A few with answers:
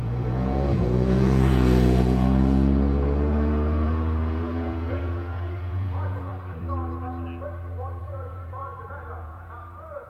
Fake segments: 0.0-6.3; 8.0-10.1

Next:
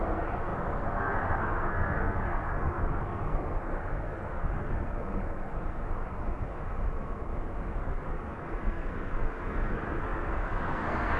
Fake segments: 0.0-11.2

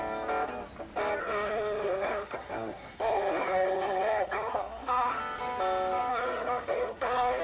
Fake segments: 1.2-5.2; 6.1-7.4

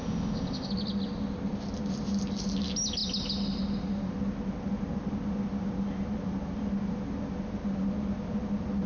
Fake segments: 0.0-0.7

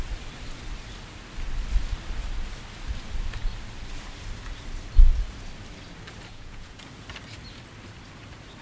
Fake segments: 6.3-6.8

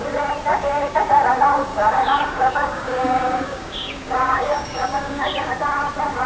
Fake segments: 0.5-1.1; 1.7-5.5

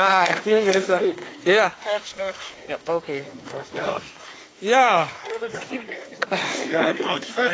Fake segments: 0.0-7.5